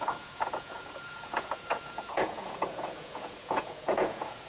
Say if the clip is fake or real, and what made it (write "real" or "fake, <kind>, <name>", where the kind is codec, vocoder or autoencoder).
fake, vocoder, Vocos